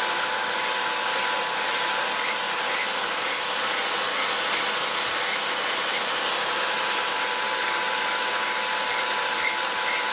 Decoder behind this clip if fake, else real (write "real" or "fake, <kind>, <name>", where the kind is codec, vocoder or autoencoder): real